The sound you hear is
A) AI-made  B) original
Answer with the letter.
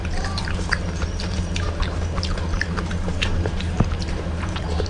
A